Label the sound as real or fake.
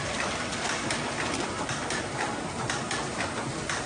fake